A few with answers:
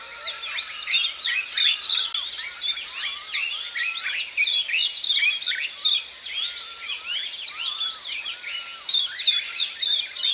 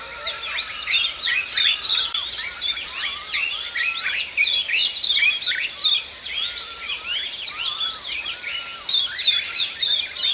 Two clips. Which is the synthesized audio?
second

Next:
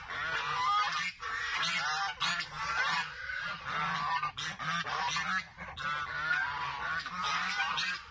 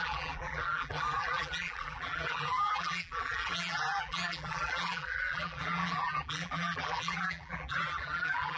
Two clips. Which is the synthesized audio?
second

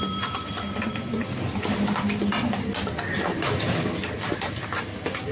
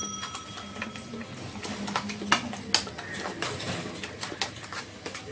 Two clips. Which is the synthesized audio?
first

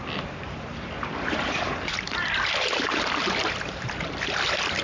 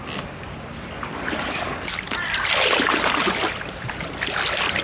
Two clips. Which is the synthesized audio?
first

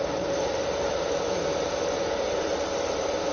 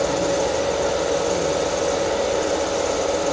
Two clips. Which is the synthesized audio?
first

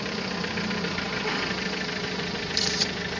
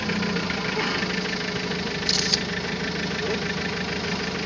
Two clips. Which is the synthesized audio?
first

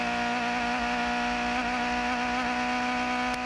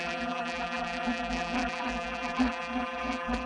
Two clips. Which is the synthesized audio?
second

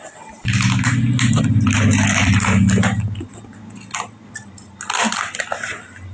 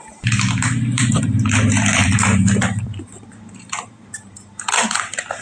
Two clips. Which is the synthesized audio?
second